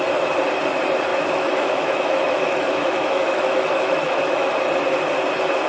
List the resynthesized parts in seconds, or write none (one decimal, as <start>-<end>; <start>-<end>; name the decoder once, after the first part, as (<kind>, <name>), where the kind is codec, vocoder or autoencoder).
1.1-4.5 (autoencoder, DAC-VAE)